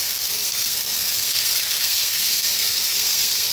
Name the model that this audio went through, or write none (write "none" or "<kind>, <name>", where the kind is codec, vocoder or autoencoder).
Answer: codec, SNAC